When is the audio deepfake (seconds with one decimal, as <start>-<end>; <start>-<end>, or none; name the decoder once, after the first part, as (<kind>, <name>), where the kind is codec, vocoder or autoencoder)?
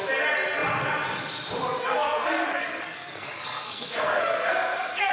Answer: 1.8-5.1 (codec, SNAC)